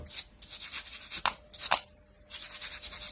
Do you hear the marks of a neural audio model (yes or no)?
no